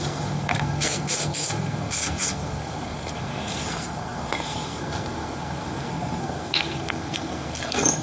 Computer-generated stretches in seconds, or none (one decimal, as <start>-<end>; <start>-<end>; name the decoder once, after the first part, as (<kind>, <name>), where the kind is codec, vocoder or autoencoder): 0.0-8.0 (codec, SNAC)

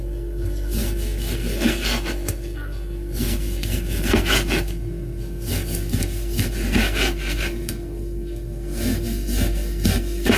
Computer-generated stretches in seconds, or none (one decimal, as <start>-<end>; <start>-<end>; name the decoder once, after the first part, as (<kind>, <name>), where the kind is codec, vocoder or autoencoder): 0.0-10.4 (codec, SNAC)

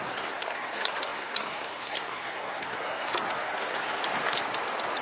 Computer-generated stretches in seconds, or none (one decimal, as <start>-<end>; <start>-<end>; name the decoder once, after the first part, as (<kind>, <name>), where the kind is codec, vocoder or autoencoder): 0.0-4.0 (codec, SNAC)

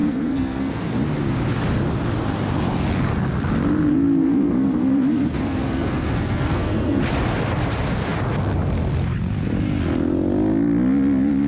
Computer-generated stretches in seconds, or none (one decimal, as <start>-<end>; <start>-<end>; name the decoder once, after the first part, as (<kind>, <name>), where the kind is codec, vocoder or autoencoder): 0.0-0.8 (codec, SNAC); 3.9-7.0